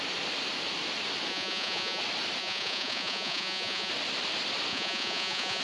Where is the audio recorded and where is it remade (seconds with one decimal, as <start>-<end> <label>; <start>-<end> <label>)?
0.0-1.3 recorded; 1.3-2.0 remade; 2.0-2.4 recorded; 2.4-3.9 remade; 3.9-4.7 recorded; 4.7-5.6 remade